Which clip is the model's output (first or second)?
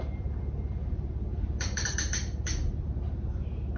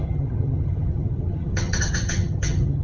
second